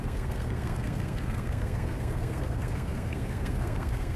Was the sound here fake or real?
fake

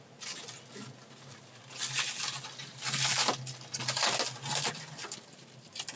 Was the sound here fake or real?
real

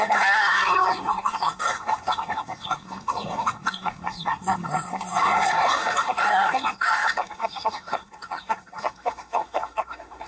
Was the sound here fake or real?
fake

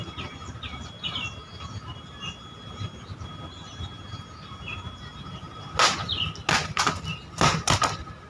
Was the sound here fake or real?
real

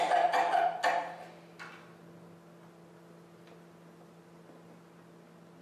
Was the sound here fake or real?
real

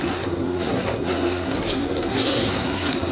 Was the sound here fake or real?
fake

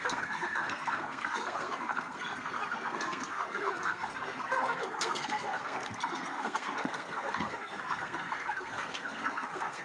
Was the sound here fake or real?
fake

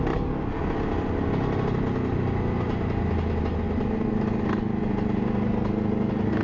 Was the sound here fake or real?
real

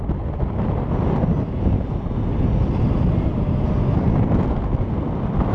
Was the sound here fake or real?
real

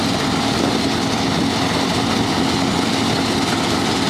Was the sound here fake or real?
real